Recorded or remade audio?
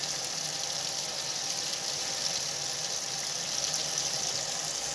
recorded